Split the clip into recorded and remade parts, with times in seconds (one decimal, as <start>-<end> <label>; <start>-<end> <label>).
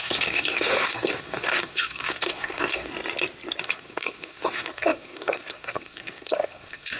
0.0-2.9 remade; 2.9-3.6 recorded; 3.6-7.0 remade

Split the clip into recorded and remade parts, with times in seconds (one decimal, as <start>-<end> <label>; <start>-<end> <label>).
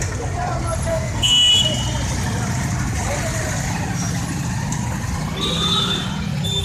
0.0-0.9 recorded; 0.9-1.5 remade; 1.5-6.6 recorded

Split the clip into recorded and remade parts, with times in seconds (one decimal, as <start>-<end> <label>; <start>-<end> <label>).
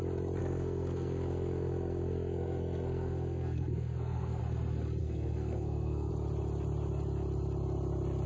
0.0-0.4 recorded; 0.4-4.4 remade; 4.4-5.0 recorded; 5.0-6.1 remade; 6.1-8.3 recorded